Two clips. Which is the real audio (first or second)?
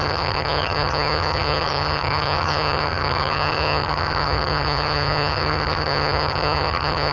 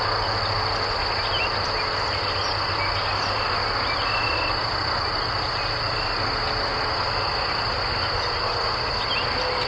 second